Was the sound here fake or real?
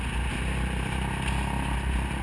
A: real